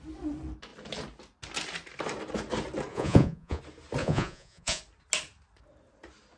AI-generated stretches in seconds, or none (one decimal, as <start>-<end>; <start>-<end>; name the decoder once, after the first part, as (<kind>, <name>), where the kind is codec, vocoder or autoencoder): 2.9-3.6 (vocoder, Vocos); 4.0-4.8